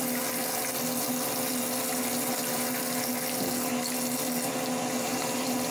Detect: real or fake real